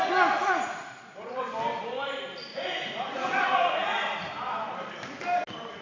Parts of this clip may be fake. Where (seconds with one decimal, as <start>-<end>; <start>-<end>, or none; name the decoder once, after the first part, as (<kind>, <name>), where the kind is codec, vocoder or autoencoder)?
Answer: 0.4-1.4 (vocoder, Vocos); 2.5-4.3